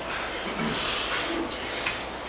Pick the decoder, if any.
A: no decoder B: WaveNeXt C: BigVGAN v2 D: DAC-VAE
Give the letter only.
A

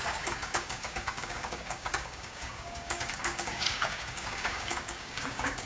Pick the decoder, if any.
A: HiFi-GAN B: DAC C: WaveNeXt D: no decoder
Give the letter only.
B